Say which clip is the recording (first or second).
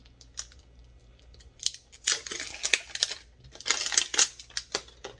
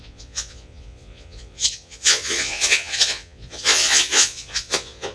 first